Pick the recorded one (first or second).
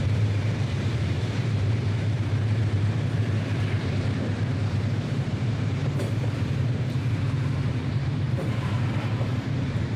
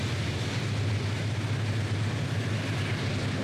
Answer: second